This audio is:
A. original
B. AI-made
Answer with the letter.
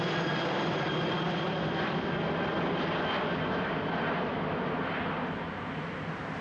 A